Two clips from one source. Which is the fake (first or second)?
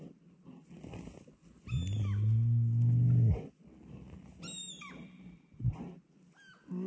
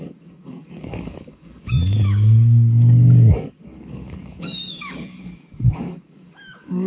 second